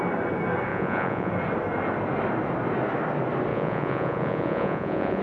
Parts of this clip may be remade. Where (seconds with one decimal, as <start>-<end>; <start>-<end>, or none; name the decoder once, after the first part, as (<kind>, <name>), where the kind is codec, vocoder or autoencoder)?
0.7-1.3 (vocoder, Vocos); 3.5-5.2